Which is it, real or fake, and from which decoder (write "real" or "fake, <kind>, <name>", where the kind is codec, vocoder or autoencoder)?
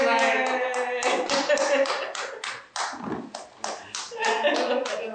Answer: real